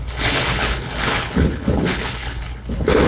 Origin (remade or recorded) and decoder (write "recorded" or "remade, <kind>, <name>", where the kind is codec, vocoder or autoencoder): remade, codec, HILCodec